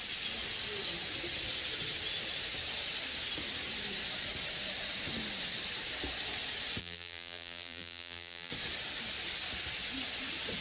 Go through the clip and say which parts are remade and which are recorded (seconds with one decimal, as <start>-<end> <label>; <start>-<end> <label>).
0.0-6.8 recorded; 6.8-8.5 remade; 8.5-10.6 recorded

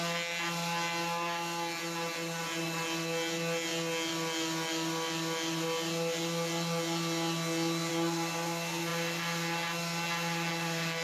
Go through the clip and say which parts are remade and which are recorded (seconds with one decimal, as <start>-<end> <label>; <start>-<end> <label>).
0.0-11.0 recorded